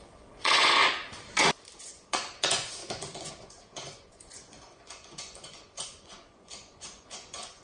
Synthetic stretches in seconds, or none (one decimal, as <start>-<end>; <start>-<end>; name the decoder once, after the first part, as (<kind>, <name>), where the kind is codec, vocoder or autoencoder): 0.0-0.8 (vocoder, Vocos); 1.8-7.6

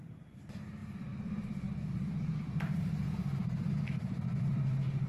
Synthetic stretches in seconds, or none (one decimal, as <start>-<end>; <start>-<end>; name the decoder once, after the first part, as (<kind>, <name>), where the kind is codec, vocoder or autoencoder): 0.0-5.1 (vocoder, BigVGAN v2)